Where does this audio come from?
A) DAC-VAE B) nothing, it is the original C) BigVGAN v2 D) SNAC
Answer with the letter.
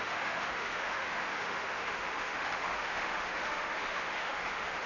A